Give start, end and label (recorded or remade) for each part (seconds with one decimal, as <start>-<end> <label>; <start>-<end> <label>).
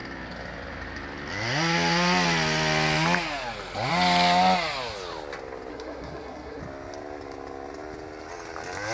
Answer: 0.0-5.7 recorded; 5.7-6.6 remade; 6.6-8.9 recorded